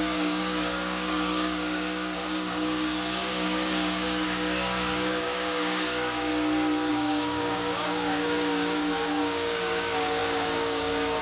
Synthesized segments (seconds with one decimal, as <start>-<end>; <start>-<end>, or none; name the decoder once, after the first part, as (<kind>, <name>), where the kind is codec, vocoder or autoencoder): 0.0-6.3 (codec, DAC); 6.9-11.2